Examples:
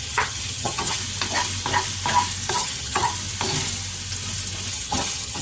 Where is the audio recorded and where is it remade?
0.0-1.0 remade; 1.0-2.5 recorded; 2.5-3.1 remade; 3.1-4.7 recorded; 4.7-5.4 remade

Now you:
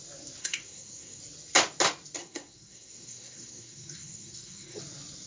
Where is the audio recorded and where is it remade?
0.0-0.4 recorded; 0.4-1.2 remade; 1.2-2.2 recorded; 2.2-4.8 remade; 4.8-5.3 recorded

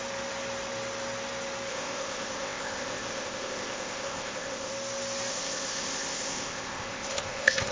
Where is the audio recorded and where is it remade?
0.0-1.7 recorded; 1.7-4.7 remade; 4.7-5.3 recorded; 5.3-7.7 remade

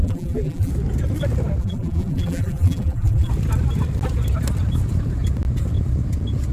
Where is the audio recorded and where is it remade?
0.0-0.7 remade; 0.7-1.6 recorded; 1.6-3.3 remade; 3.3-6.5 recorded